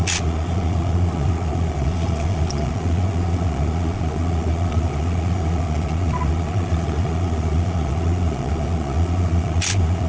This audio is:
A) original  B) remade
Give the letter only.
B